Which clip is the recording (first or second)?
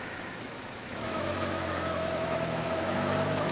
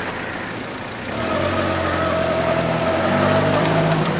second